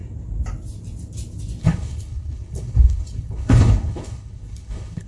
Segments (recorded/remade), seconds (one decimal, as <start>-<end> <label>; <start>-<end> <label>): 0.0-1.6 recorded; 1.6-5.1 remade